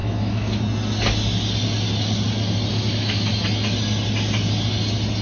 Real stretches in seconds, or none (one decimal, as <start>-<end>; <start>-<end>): 0.6-2.7; 3.3-5.2